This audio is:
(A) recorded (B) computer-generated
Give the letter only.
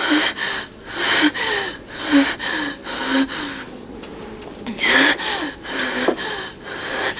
A